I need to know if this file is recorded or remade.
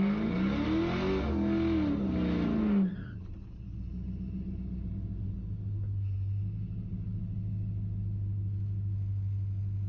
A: recorded